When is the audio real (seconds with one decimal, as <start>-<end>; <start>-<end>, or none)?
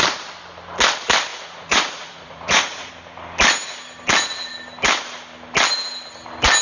0.0-1.3; 2.9-6.6